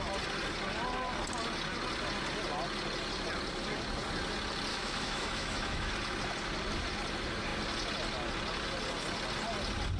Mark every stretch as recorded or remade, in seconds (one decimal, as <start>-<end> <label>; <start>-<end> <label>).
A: 0.0-4.7 recorded; 4.7-5.9 remade; 5.9-10.0 recorded